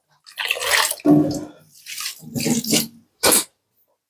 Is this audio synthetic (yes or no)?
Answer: no